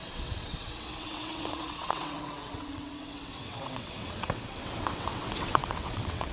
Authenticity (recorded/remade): remade